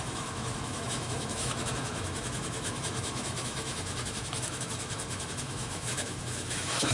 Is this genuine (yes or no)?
no